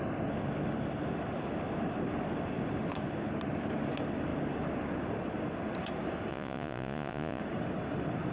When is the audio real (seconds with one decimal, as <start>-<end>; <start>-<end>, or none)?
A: 0.0-6.3; 7.4-8.3